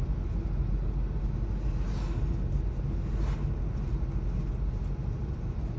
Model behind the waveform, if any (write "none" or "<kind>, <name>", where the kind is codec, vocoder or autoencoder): none